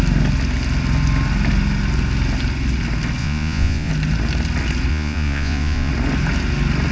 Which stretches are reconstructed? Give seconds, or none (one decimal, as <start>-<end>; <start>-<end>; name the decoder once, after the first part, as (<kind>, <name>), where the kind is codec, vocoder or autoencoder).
3.2-3.9 (vocoder, Vocos); 4.9-5.9